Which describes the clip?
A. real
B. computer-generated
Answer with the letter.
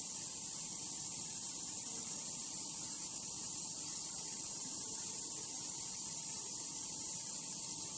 B